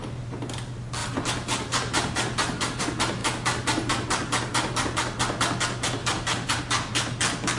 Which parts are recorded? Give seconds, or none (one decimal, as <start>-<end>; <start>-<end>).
0.0-1.0; 2.8-6.0; 6.6-7.6